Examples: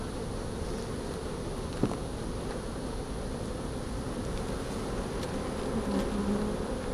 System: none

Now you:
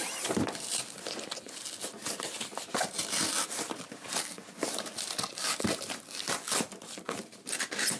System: none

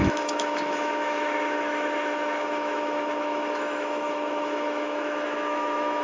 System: autoencoder, DAC-VAE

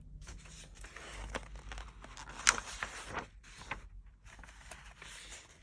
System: none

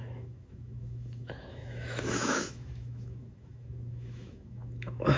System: autoencoder, DAC-VAE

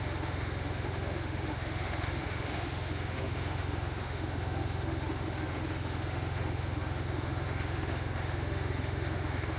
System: autoencoder, DAC-VAE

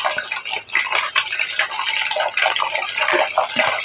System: none